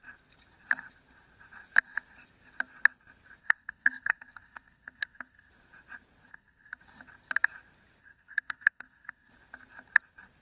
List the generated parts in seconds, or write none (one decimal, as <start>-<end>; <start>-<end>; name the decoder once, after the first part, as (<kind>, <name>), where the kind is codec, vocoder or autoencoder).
3.4-5.5 (codec, SNAC); 6.3-6.8; 8.0-9.3